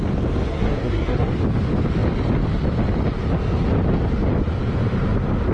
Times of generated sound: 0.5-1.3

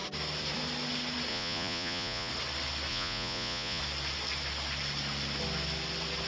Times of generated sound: 1.3-2.3; 2.9-3.8

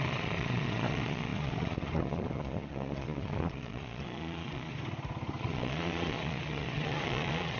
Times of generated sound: 0.0-4.7; 5.4-7.6